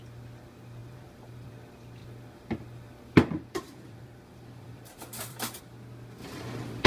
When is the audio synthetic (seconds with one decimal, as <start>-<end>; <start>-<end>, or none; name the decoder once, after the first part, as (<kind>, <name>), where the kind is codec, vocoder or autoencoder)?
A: 0.8-1.5 (vocoder, BigVGAN v2); 2.0-5.6; 6.2-6.9